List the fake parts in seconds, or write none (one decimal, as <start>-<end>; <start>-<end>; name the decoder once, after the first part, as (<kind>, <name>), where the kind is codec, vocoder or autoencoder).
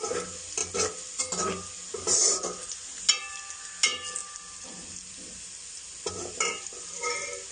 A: none